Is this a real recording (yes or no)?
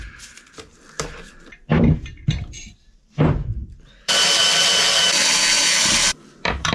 no